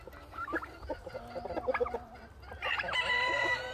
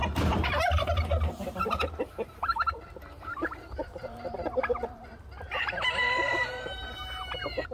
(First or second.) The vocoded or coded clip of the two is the second